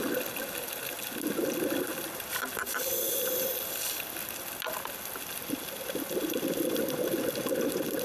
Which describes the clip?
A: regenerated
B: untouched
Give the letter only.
B